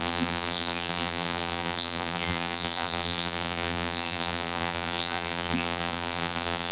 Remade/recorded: remade